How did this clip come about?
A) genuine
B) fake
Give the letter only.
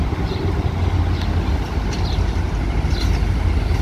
A